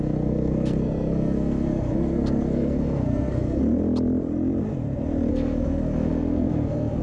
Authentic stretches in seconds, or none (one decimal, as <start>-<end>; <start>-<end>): 3.6-5.3